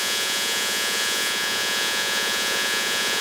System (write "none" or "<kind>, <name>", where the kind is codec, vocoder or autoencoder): vocoder, Vocos